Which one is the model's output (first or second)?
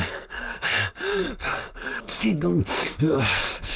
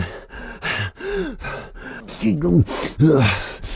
first